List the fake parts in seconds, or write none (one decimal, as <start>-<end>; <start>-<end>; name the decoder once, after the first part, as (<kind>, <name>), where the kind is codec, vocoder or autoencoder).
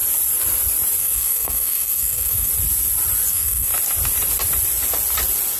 1.0-2.5 (codec, SNAC); 3.3-3.7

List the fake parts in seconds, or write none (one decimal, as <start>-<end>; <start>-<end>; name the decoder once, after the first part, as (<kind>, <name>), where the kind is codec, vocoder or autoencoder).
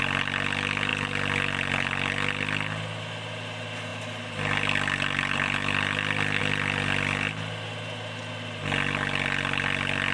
none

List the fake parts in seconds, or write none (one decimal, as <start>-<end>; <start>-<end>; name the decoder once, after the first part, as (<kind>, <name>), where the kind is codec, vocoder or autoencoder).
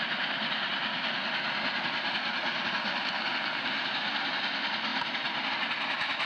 none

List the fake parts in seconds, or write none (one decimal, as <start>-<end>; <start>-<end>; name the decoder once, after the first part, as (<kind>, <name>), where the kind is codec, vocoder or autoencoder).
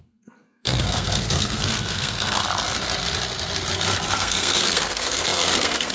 0.0-2.4 (codec, SNAC); 4.1-5.9